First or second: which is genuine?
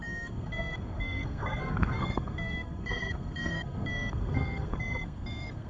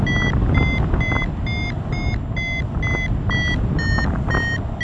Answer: second